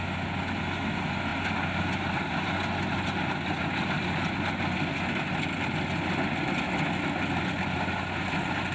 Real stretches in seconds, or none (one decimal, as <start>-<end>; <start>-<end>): 0.0-8.7